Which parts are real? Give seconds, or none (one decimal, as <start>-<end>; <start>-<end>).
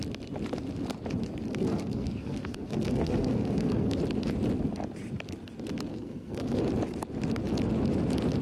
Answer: 0.0-1.5; 4.0-5.9; 6.6-8.4